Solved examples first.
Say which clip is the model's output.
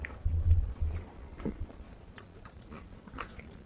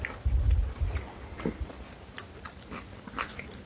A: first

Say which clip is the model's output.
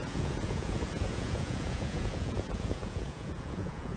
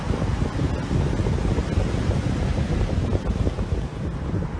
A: first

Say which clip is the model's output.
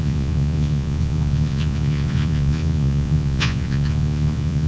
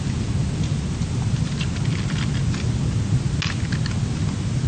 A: first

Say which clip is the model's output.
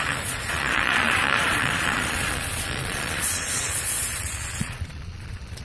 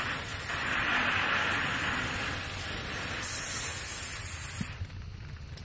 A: first